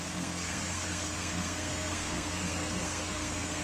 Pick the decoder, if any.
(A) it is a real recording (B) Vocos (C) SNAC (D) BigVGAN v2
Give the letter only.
C